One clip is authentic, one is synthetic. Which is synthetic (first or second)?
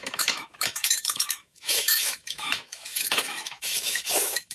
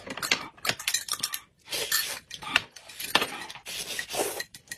first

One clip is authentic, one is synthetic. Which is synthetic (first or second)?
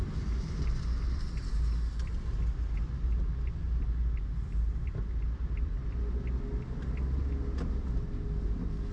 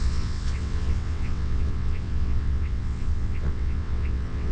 second